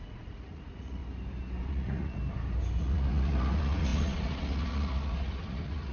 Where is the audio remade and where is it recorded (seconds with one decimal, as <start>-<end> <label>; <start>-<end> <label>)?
0.0-1.0 remade; 1.0-1.7 recorded; 1.7-2.2 remade; 2.2-2.8 recorded; 2.8-5.9 remade